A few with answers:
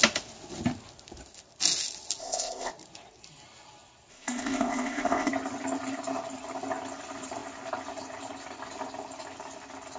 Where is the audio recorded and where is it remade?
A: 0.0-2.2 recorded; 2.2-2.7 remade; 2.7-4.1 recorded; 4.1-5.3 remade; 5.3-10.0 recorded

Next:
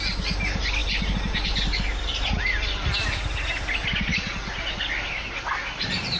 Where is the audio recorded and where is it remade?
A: 0.0-6.2 recorded